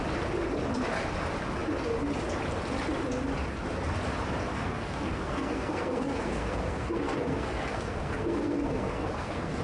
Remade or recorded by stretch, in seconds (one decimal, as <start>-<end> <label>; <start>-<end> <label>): 0.0-4.5 recorded; 4.5-9.6 remade